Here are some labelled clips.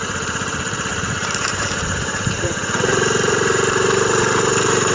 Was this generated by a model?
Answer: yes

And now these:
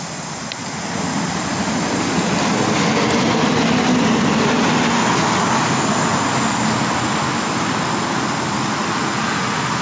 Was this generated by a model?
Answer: no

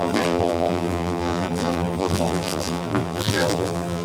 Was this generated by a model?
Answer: yes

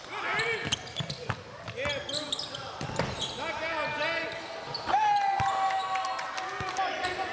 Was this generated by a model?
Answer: no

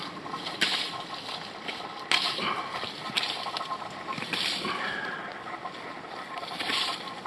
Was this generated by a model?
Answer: no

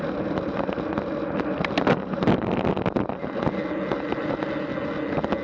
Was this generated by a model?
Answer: no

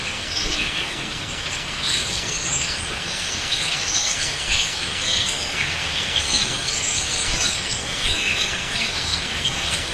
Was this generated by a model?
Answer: yes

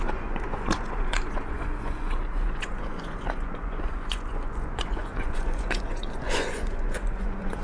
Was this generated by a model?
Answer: yes